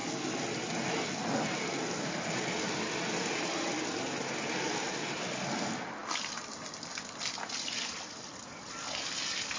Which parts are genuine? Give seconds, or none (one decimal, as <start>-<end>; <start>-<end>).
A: 0.0-9.6